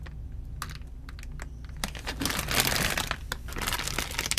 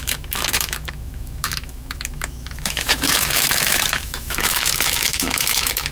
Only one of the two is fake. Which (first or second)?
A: second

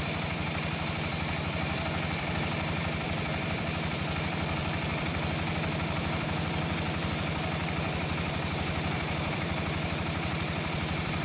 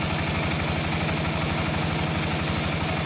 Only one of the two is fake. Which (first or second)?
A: first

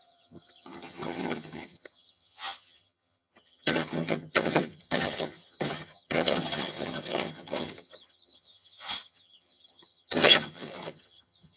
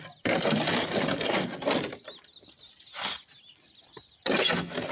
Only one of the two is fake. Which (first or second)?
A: first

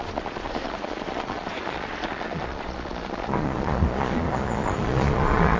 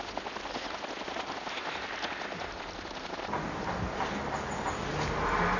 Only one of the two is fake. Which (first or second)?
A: first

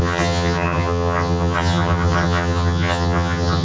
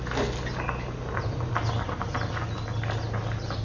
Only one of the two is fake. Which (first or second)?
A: first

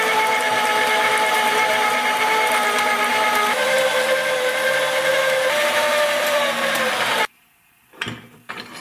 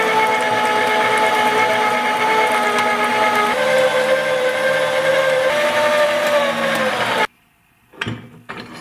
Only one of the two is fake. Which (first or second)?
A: first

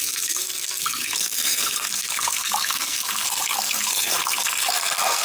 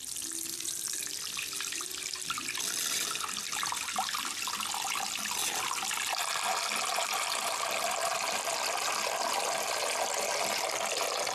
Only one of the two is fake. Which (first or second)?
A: first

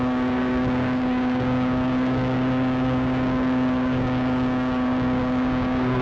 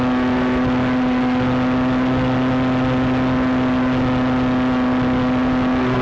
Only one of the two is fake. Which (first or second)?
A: first